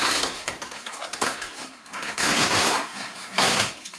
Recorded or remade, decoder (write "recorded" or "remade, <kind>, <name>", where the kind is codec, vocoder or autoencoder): remade, codec, SNAC